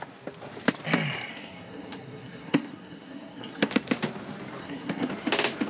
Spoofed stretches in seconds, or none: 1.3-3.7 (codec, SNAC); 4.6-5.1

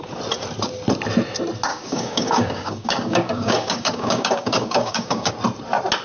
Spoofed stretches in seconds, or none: 1.7-5.3 (codec, DAC)

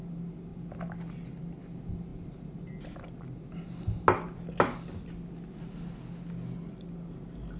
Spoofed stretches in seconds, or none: none

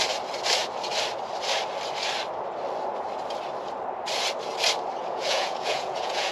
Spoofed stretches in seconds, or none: 5.0-6.3 (vocoder, Vocos)

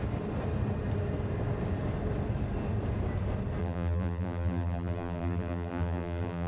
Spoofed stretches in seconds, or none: 3.6-6.5 (vocoder, BigVGAN v2)